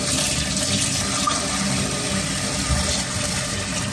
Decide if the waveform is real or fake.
real